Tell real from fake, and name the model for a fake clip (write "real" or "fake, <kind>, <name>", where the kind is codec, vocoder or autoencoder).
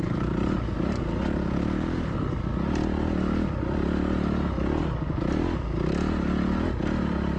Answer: real